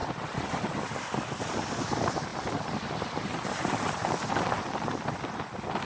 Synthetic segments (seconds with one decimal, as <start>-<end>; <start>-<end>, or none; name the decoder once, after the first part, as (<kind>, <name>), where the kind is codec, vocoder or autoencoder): none